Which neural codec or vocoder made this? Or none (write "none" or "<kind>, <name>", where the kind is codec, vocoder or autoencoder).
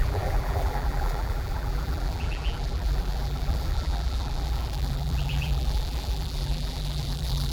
vocoder, BigVGAN v2